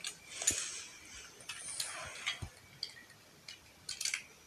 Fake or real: real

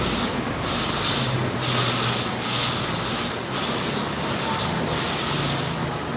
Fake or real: real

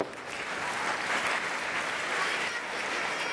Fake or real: real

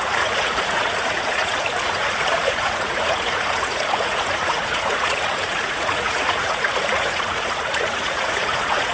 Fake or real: fake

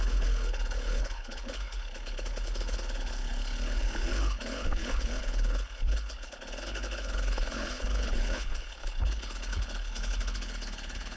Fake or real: fake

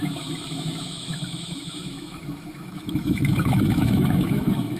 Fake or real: fake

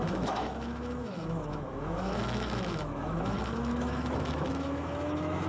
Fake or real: fake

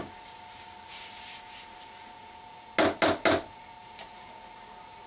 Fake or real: real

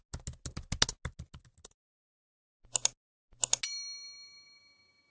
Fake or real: real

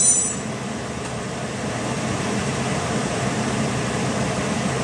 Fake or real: fake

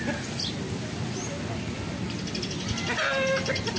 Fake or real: real